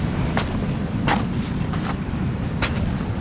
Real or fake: fake